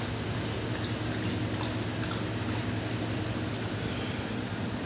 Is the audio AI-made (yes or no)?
no